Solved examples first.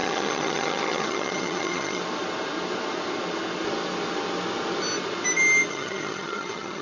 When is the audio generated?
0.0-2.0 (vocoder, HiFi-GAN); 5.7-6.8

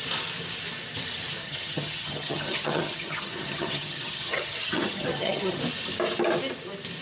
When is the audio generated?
1.4-5.6 (vocoder, HiFi-GAN)

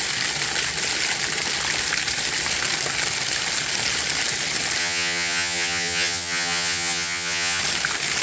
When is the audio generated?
4.8-7.6 (vocoder, HiFi-GAN)

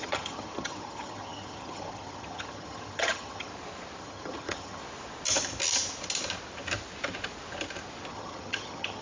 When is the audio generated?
0.0-3.5 (vocoder, HiFi-GAN); 4.0-4.8; 8.1-9.0

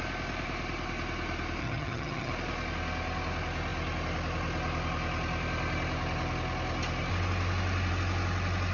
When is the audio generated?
1.6-2.3 (vocoder, HiFi-GAN)

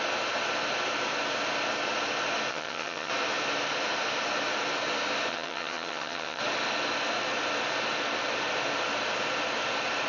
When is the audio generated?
2.5-3.1 (vocoder, HiFi-GAN); 5.3-6.4